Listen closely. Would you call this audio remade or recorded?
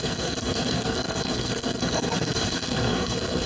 remade